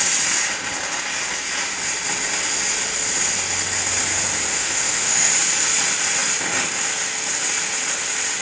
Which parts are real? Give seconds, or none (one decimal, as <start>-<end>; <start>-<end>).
0.0-4.5; 5.3-8.4

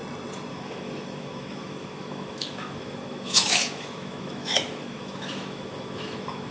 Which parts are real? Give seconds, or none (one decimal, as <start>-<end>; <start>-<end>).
0.0-0.5

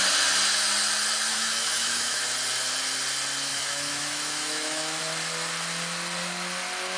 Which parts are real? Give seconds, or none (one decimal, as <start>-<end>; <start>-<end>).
0.0-1.3; 2.2-3.5; 5.0-7.0

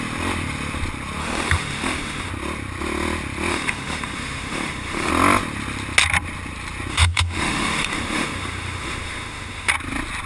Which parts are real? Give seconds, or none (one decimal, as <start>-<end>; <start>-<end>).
0.0-1.2; 2.3-3.5; 5.1-6.9; 9.7-10.3